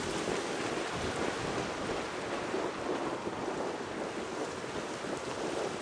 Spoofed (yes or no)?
no